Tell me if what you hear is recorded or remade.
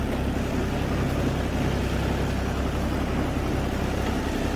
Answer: recorded